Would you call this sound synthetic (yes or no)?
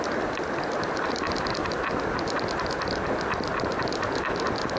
no